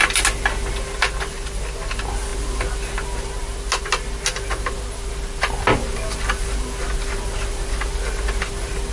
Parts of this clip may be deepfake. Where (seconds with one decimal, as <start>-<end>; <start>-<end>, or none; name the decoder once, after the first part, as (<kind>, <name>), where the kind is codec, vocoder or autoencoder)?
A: none